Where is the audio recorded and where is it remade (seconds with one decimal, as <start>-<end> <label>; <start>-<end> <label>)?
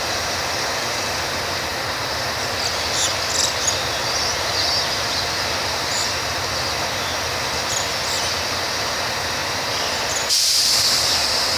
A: 0.0-11.6 recorded